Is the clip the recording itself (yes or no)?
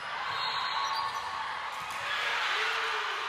yes